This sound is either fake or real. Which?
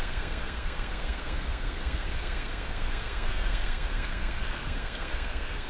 fake